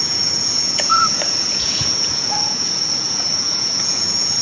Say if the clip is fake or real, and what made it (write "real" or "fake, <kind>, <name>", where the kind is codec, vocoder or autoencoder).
fake, vocoder, Vocos